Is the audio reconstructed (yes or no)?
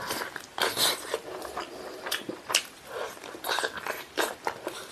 no